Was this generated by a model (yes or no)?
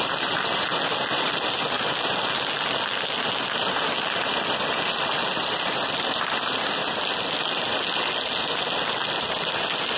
no